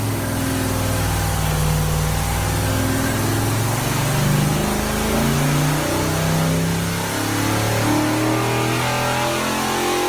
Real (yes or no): yes